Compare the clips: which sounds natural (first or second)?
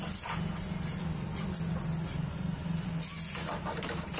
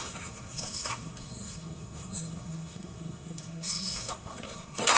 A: first